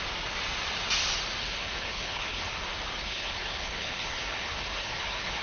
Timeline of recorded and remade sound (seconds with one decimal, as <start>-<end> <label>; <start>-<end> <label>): 0.0-1.4 recorded; 1.4-2.5 remade; 2.5-3.0 recorded; 3.0-5.4 remade